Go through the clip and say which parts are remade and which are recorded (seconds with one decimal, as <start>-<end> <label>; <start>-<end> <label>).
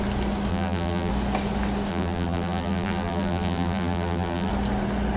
0.0-0.5 recorded; 0.5-1.1 remade; 1.1-1.9 recorded; 1.9-4.5 remade; 4.5-5.2 recorded